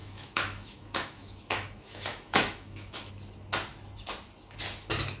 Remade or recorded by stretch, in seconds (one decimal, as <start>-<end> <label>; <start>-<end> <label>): 0.0-3.1 remade; 3.1-5.2 recorded